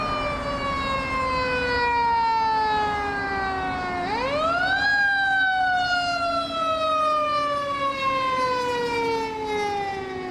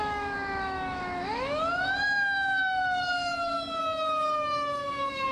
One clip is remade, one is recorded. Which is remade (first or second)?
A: second